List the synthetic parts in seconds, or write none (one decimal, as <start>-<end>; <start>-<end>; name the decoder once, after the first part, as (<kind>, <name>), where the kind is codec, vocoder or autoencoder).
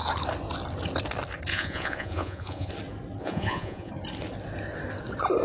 1.5-2.7 (vocoder, Vocos); 3.2-3.9